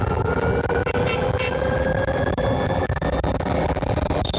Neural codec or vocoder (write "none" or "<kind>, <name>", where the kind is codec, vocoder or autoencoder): vocoder, BigVGAN v2